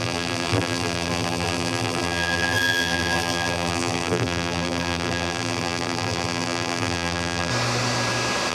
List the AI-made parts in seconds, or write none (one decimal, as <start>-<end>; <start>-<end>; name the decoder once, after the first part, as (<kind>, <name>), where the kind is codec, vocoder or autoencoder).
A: 0.0-7.5 (vocoder, BigVGAN v2)

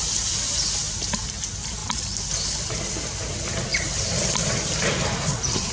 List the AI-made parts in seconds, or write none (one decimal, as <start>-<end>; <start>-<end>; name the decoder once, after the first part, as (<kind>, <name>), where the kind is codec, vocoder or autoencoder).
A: 3.7-5.7 (vocoder, BigVGAN v2)

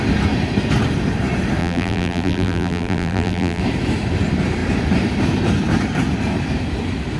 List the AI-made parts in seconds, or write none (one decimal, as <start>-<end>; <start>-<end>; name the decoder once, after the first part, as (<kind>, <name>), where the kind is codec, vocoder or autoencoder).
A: 1.6-3.6 (vocoder, BigVGAN v2)

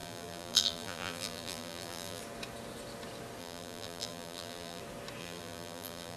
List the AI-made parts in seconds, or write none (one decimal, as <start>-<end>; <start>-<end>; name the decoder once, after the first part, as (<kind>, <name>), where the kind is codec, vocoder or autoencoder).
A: 0.0-2.2 (vocoder, BigVGAN v2); 3.4-4.8; 5.2-6.2

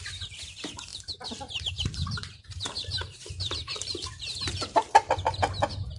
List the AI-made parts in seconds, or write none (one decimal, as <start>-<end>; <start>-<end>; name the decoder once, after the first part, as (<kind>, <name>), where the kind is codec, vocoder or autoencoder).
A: 0.9-4.5 (vocoder, BigVGAN v2)

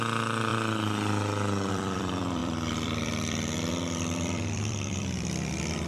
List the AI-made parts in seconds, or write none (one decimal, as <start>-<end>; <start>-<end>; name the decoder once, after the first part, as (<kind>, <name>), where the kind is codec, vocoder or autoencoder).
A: 0.0-0.5 (vocoder, BigVGAN v2); 1.7-5.9